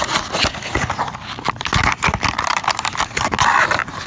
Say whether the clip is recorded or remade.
recorded